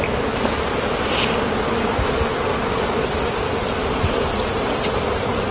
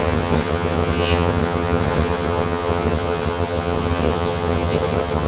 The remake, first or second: second